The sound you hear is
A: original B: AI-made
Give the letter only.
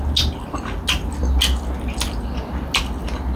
A